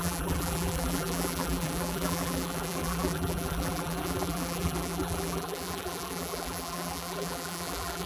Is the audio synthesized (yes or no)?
yes